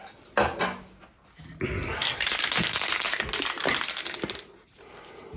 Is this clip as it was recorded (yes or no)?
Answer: yes